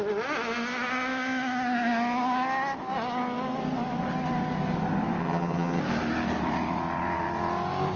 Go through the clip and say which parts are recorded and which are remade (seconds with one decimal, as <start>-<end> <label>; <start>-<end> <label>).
0.0-5.2 recorded; 5.2-5.8 remade; 5.8-8.0 recorded